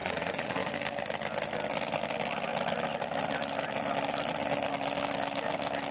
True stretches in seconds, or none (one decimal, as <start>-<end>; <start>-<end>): 0.7-5.9